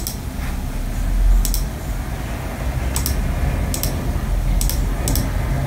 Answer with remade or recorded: recorded